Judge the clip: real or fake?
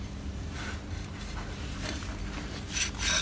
real